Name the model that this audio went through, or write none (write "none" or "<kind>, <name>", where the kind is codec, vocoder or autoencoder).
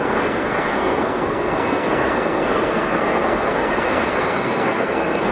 codec, SNAC